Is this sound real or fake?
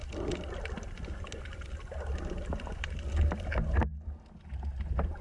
real